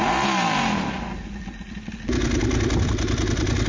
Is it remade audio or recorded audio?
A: recorded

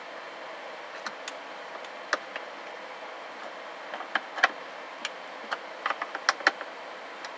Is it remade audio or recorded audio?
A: recorded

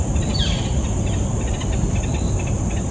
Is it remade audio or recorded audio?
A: recorded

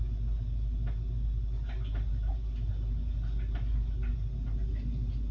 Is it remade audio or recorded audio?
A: recorded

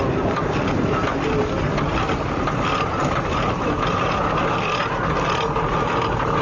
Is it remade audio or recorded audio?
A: recorded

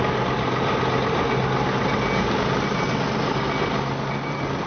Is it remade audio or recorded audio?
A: recorded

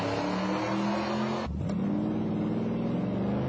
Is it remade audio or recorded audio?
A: recorded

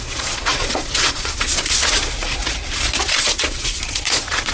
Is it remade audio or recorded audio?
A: remade